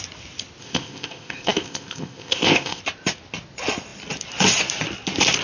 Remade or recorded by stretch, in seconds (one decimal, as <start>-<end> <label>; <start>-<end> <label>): 0.0-0.6 recorded; 0.6-2.8 remade; 2.8-5.4 recorded